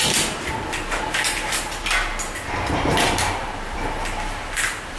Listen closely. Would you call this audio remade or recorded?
recorded